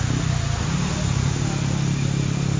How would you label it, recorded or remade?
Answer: recorded